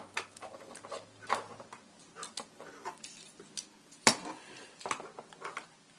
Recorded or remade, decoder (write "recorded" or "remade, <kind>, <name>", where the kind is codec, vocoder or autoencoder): recorded